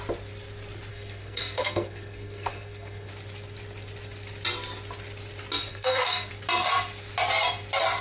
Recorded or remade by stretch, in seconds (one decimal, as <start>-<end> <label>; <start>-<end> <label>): 0.0-0.9 recorded; 0.9-3.1 remade; 3.1-5.7 recorded; 5.7-6.3 remade; 6.3-8.0 recorded